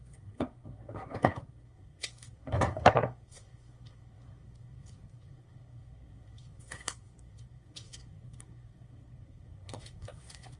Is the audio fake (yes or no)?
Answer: yes